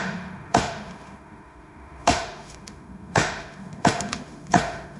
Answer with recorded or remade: remade